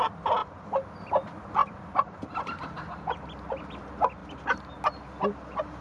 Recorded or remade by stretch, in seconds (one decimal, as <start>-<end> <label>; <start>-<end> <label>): 0.0-0.4 recorded; 0.4-0.9 remade; 0.9-5.8 recorded